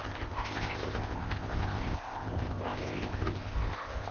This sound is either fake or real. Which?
fake